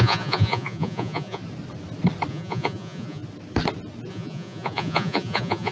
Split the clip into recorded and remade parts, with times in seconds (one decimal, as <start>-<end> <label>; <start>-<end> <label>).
0.0-1.4 remade; 1.4-2.3 recorded; 2.3-3.2 remade; 3.2-4.1 recorded; 4.1-5.7 remade